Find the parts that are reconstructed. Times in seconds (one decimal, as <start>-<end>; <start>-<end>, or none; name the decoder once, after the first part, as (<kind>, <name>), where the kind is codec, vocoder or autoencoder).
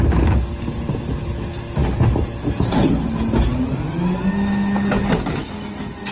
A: none